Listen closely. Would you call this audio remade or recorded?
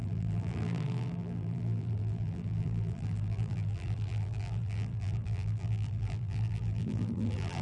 remade